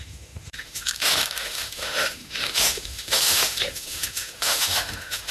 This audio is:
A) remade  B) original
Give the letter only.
A